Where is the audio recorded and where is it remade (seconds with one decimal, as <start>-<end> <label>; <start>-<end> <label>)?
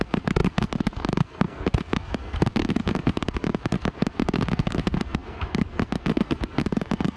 0.0-7.2 remade